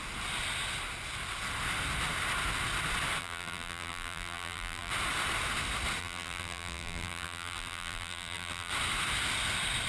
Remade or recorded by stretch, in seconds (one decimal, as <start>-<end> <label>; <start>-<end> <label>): 0.0-3.2 recorded; 3.2-4.9 remade; 4.9-6.0 recorded; 6.0-8.7 remade; 8.7-9.9 recorded